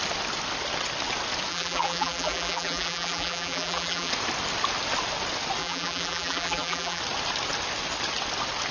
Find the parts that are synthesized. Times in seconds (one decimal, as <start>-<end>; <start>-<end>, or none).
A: 1.5-4.1; 5.6-7.0